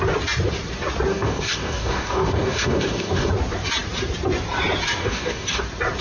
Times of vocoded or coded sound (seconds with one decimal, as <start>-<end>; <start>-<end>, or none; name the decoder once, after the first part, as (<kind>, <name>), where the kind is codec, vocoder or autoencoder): 1.1-3.3 (codec, DAC); 5.0-5.6